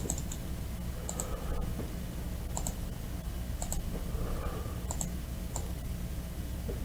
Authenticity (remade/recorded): recorded